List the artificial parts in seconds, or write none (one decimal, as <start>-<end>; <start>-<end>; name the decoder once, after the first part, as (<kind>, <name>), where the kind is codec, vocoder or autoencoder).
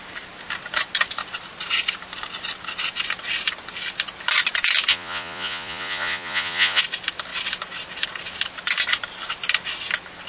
4.9-6.8 (vocoder, Vocos)